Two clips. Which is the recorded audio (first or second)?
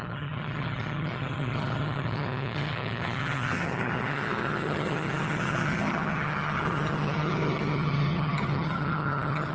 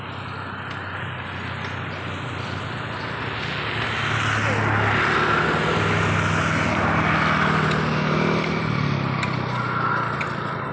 second